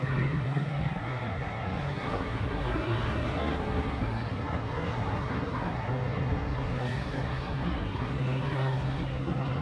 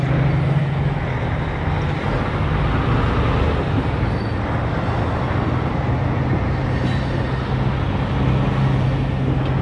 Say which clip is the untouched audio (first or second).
second